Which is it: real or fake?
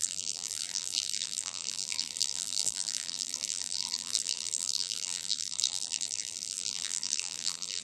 fake